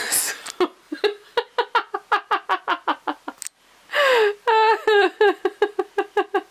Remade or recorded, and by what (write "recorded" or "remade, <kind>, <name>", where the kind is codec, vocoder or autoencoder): recorded